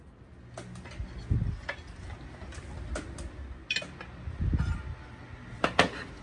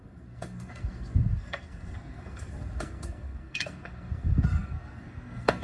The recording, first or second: first